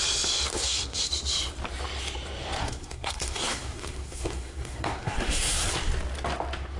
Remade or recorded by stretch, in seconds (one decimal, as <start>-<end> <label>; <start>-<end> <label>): 0.0-0.5 recorded; 0.5-1.1 remade; 1.1-2.6 recorded; 2.6-5.7 remade; 5.7-6.8 recorded

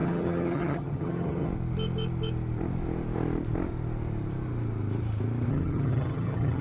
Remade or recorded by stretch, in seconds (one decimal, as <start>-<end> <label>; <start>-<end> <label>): 0.0-1.5 remade; 1.5-5.5 recorded; 5.5-6.6 remade

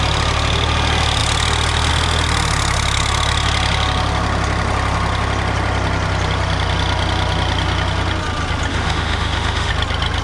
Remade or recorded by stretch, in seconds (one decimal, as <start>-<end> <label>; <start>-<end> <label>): 0.0-8.7 recorded; 8.7-9.7 remade; 9.7-10.2 recorded

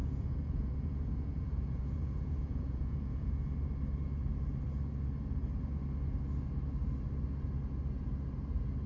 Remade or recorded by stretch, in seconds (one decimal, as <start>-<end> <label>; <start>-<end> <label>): 0.0-3.5 remade; 3.5-8.9 recorded